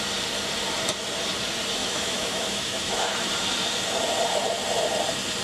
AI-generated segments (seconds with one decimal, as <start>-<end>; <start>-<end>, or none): 1.8-3.3